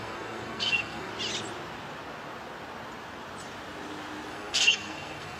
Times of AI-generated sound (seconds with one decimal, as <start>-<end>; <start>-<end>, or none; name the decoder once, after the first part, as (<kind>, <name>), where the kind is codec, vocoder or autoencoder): 0.0-1.1 (codec, SNAC); 4.3-5.4